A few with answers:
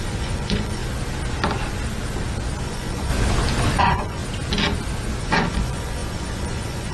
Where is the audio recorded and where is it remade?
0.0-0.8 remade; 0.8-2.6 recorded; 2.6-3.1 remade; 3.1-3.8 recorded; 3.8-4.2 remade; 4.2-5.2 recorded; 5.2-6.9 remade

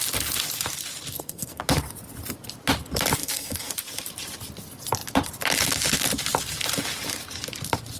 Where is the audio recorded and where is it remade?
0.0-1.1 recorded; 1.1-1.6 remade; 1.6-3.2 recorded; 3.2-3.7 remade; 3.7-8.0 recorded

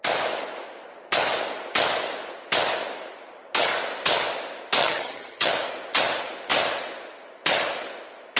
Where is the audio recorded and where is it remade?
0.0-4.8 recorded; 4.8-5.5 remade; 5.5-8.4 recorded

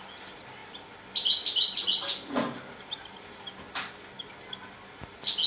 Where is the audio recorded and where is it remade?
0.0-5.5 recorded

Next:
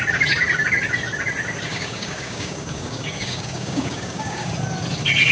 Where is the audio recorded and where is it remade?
0.0-1.7 recorded; 1.7-4.5 remade; 4.5-5.3 recorded